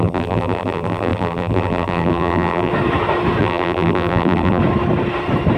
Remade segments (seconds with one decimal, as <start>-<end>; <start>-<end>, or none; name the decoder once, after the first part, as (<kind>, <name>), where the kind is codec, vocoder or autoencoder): 0.0-2.7 (vocoder, BigVGAN v2); 3.4-4.6